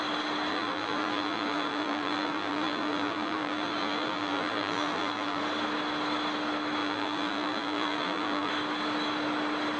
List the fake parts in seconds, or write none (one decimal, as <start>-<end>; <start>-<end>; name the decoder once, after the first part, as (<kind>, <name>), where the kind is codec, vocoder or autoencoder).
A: 0.5-5.4 (vocoder, BigVGAN v2); 6.8-8.5